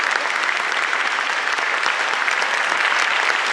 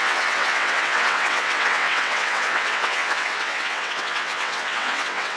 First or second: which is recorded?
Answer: first